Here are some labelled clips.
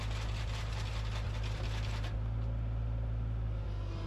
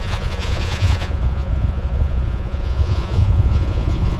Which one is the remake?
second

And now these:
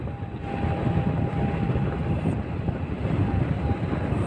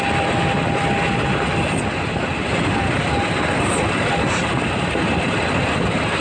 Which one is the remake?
first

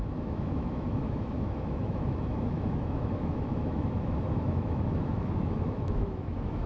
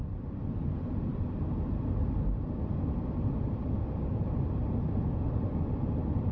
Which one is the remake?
first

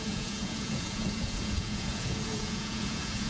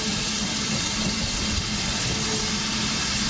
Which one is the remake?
first